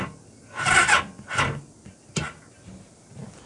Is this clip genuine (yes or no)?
yes